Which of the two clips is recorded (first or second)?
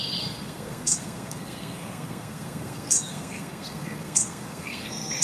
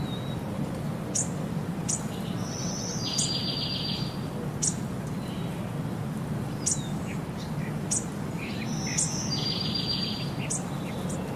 second